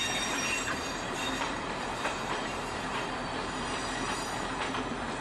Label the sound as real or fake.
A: fake